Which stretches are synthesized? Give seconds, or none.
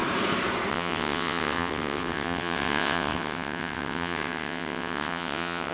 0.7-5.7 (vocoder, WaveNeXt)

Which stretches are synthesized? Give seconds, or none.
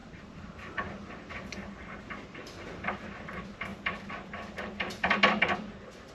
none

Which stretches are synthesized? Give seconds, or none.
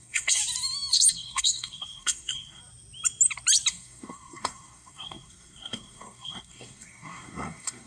0.0-0.4 (codec, SNAC); 1.1-2.6; 3.7-7.9